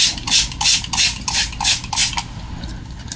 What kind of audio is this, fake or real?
real